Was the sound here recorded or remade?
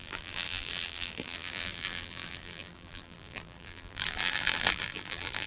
remade